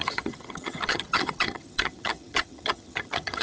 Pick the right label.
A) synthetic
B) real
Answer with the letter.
A